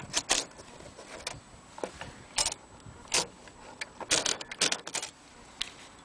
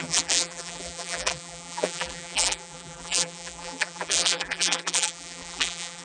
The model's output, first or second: second